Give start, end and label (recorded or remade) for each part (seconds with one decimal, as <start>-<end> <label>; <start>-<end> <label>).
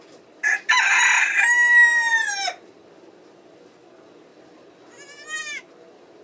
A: 0.0-0.4 remade; 0.4-1.4 recorded; 1.4-4.3 remade; 4.3-6.2 recorded